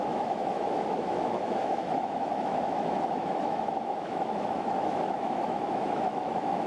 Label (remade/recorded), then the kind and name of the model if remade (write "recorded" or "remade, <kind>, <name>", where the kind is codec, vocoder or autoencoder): remade, autoencoder, DAC-VAE